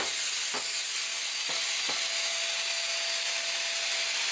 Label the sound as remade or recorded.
recorded